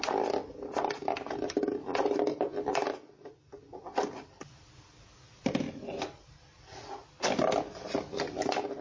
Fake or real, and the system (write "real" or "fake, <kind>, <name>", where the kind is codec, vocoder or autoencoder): real